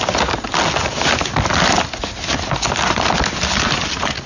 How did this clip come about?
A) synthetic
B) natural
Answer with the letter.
B